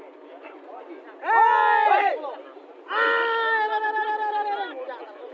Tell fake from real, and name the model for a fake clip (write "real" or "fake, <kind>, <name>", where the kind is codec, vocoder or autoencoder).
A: real